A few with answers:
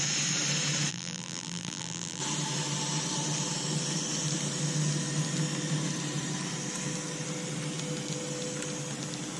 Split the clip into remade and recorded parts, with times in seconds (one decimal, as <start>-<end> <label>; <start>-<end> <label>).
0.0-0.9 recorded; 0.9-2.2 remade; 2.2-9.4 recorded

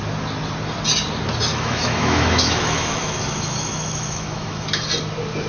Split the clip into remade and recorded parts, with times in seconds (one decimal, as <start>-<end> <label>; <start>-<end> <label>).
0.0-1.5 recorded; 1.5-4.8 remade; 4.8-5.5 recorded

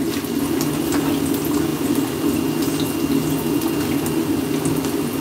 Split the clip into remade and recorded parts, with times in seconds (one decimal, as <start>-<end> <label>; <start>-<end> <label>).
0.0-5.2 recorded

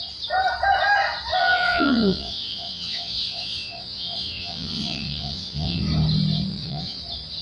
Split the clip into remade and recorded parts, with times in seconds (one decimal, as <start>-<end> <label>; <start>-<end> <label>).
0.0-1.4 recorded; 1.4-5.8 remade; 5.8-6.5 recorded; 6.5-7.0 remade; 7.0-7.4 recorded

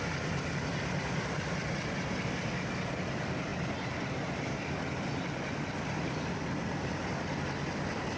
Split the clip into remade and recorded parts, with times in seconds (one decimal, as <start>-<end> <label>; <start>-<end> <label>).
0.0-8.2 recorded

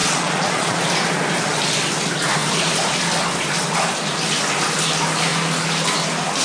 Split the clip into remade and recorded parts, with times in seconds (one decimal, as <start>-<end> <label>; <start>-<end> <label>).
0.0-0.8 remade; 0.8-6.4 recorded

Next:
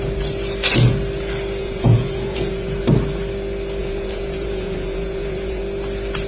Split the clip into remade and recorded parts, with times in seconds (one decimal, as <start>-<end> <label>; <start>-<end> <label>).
0.0-1.6 recorded; 1.6-2.8 remade; 2.8-3.8 recorded; 3.8-5.6 remade; 5.6-6.3 recorded